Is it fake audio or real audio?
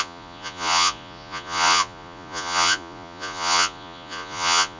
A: fake